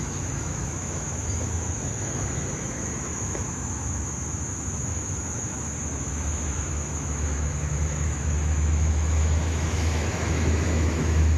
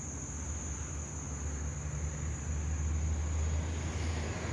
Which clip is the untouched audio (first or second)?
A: second